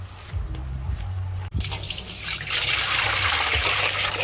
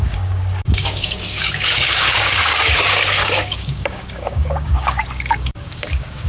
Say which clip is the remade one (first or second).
second